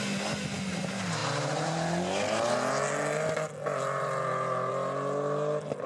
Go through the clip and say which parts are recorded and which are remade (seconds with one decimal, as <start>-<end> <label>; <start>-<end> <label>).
0.0-5.9 recorded